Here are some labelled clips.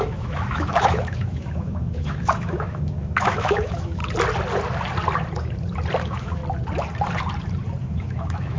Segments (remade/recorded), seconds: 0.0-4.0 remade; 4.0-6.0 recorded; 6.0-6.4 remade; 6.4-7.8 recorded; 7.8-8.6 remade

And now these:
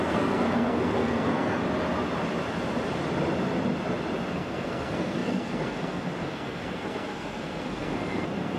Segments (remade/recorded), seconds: 0.0-1.6 remade; 1.6-4.3 recorded; 4.3-8.6 remade

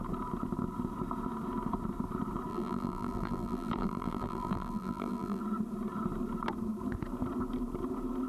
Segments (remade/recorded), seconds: 0.0-2.5 recorded; 2.5-5.4 remade; 5.4-8.3 recorded